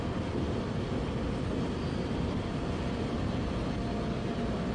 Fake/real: real